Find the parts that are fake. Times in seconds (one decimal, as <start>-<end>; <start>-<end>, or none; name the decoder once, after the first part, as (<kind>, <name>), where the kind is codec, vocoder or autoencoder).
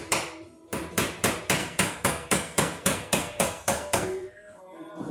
1.6-4.6 (codec, SNAC)